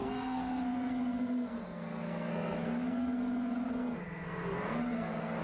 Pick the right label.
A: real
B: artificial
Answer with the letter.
B